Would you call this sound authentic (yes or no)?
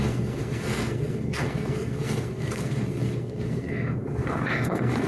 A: no